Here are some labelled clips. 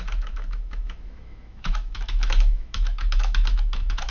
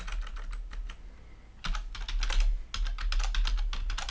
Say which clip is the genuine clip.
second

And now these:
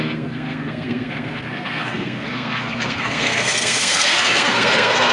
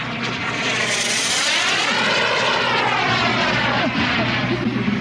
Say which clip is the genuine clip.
second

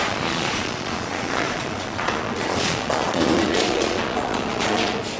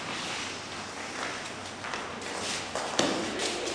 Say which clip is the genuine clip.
second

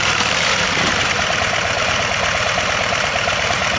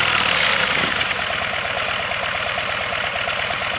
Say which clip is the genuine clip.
second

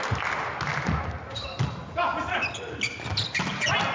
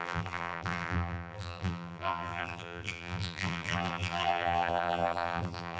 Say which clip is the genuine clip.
first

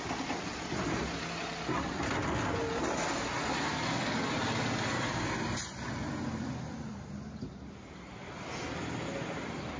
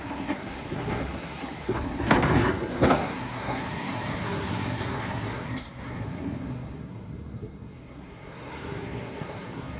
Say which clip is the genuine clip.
first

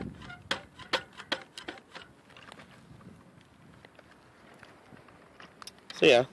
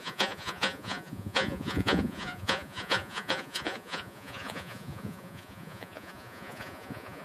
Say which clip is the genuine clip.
first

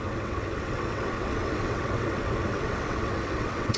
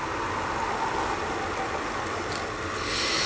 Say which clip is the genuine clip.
second